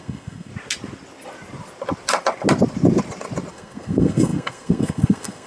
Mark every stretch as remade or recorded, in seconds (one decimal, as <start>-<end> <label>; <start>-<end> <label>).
0.0-0.5 remade; 0.5-3.5 recorded; 3.5-5.5 remade